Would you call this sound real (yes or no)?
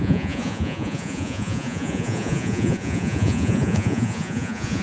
no